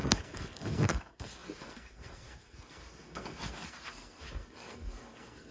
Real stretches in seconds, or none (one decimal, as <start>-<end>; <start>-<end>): none